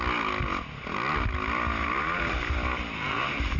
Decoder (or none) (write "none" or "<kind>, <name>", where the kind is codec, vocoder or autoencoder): none